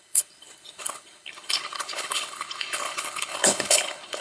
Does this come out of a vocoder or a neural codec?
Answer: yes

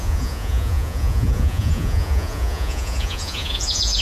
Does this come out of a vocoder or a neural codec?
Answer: yes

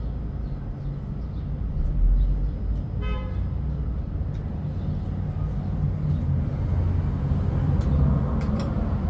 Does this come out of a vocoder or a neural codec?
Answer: no